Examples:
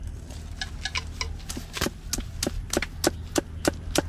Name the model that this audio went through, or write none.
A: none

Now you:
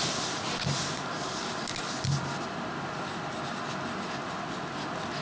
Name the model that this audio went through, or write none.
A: none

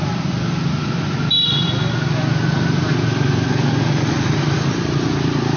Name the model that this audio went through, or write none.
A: none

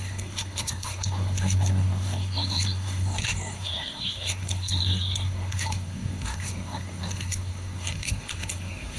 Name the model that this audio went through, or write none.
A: codec, SNAC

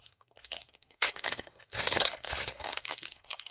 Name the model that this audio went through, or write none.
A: codec, SNAC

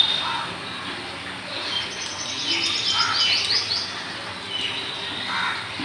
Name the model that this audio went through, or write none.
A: none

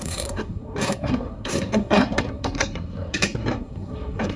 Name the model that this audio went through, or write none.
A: codec, SNAC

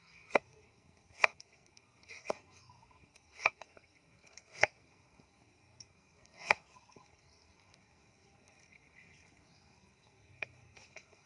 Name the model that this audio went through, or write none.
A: codec, SNAC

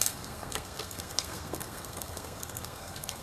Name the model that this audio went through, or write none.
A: codec, SNAC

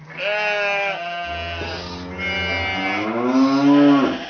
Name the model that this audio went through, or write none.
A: none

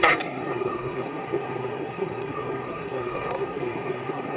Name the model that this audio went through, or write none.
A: codec, SNAC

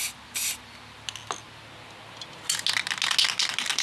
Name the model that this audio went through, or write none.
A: none